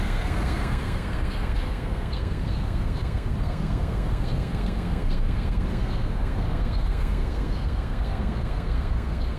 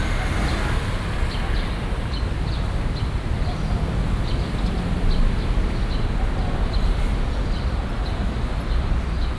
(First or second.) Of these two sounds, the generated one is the first